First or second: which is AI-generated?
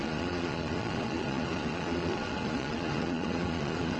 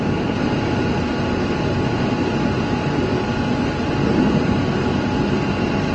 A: first